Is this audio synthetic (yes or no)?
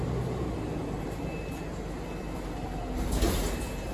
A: no